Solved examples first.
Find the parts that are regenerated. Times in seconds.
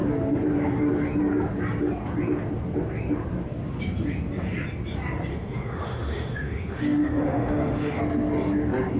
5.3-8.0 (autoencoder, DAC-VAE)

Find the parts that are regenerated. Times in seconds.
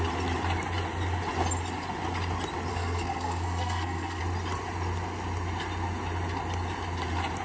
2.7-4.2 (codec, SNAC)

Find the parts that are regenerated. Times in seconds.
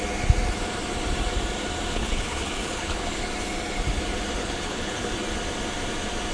1.9-3.2 (codec, HILCodec); 4.4-5.1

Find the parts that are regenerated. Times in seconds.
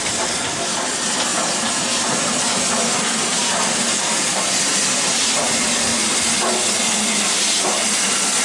1.3-4.5 (vocoder, BigVGAN v2)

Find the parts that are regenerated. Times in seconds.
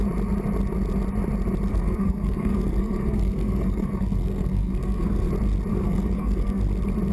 1.7-5.3 (codec, SNAC); 5.7-6.6